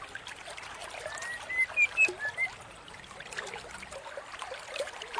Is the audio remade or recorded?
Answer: recorded